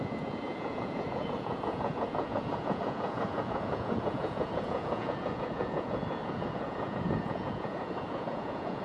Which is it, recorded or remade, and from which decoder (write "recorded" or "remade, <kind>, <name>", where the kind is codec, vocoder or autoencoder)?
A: remade, vocoder, Vocos